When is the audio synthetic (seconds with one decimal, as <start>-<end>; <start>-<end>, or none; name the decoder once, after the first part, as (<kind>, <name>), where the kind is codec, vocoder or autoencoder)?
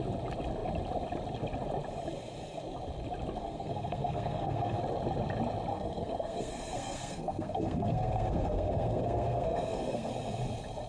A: 3.4-4.8 (codec, SNAC); 5.7-10.1